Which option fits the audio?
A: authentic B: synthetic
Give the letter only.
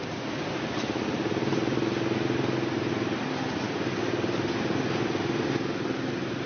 A